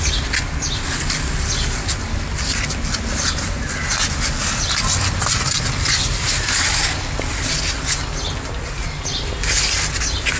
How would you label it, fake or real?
real